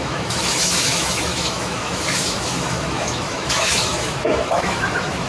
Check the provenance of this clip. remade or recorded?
remade